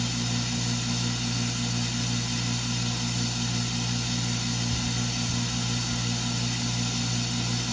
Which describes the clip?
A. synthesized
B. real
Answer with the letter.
B